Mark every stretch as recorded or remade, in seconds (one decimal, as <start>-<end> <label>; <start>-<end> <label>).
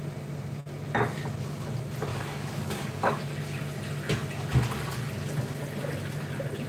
0.0-2.1 recorded; 2.1-3.2 remade; 3.2-6.7 recorded